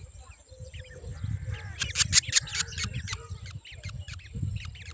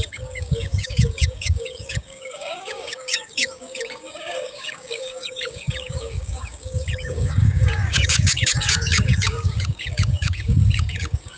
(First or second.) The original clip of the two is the first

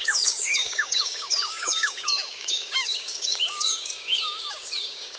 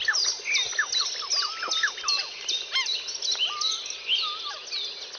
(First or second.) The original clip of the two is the second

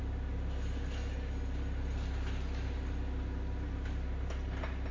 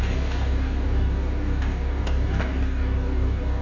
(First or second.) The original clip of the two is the first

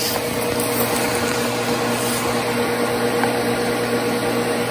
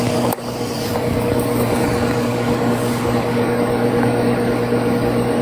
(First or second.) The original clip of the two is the first